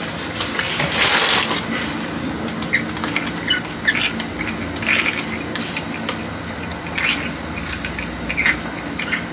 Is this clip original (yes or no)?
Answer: yes